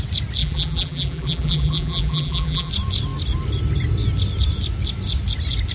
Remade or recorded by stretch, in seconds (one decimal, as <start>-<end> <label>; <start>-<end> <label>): 0.0-0.4 recorded; 0.4-2.7 remade; 2.7-5.7 recorded